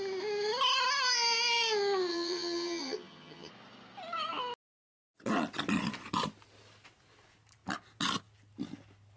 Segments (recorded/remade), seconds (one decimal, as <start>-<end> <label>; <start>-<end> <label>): 0.0-2.1 recorded; 2.1-3.5 remade; 3.5-9.2 recorded